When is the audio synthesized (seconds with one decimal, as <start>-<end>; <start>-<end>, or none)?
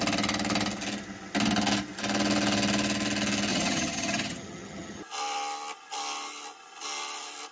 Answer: 3.5-5.0